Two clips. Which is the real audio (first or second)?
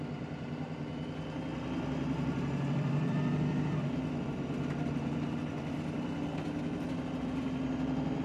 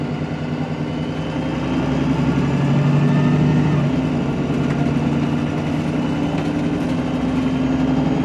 second